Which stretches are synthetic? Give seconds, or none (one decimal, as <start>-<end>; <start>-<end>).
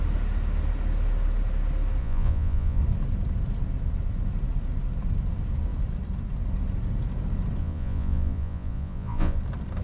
2.0-2.8; 7.6-9.4